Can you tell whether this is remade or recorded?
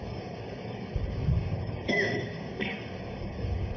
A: remade